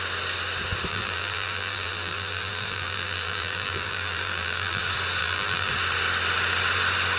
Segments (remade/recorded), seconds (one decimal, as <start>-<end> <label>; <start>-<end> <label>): 0.0-0.9 recorded; 0.9-4.8 remade; 4.8-5.2 recorded; 5.2-5.7 remade; 5.7-7.2 recorded